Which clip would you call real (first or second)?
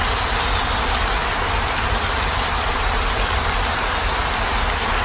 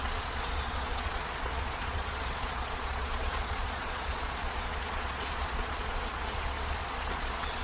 first